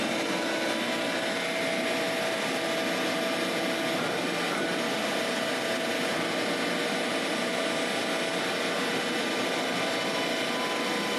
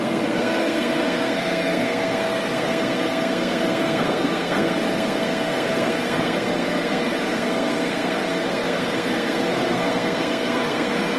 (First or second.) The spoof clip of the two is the second